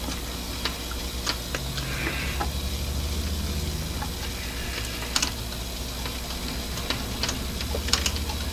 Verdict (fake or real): real